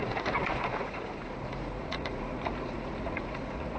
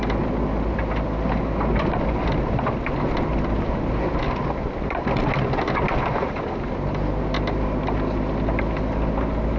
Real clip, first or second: second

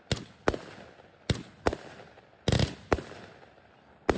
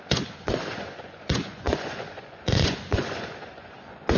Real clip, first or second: first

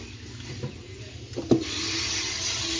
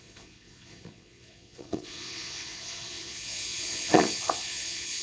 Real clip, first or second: first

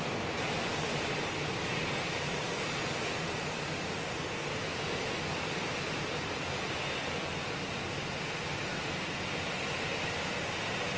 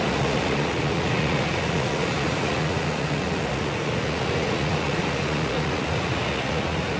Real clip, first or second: first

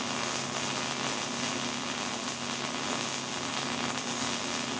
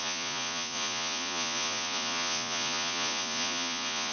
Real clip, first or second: first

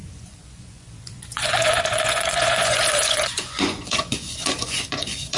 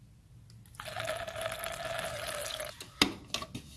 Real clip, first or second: second